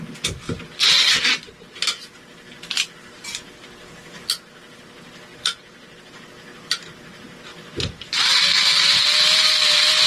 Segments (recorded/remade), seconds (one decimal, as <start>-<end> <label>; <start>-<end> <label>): 0.0-0.4 recorded; 0.4-1.0 remade; 1.0-5.3 recorded; 5.3-6.1 remade; 6.1-7.5 recorded; 7.5-10.1 remade

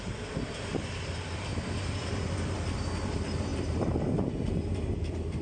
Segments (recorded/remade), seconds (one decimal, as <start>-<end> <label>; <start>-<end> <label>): 0.0-3.5 recorded; 3.5-4.5 remade; 4.5-5.4 recorded

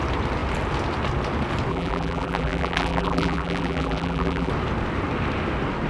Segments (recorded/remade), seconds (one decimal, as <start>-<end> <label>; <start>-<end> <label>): 0.0-1.7 recorded; 1.7-4.5 remade; 4.5-5.9 recorded

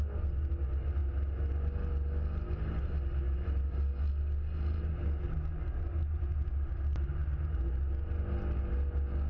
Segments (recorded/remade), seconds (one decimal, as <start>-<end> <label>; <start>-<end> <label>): 0.0-9.3 recorded

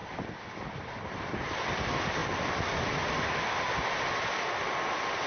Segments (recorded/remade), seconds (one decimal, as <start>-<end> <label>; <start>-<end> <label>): 0.0-1.4 remade; 1.4-5.3 recorded

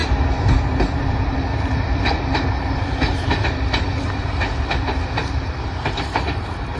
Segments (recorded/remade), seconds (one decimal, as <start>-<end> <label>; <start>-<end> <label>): 0.0-6.8 remade